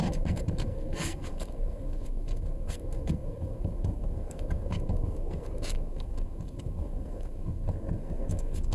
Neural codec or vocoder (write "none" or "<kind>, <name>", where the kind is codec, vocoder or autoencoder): codec, SNAC